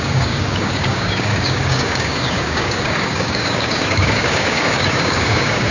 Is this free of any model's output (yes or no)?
no